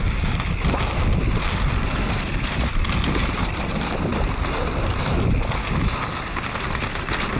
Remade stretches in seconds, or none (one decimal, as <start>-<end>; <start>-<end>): none